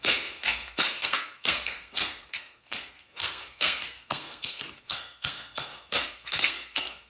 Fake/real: fake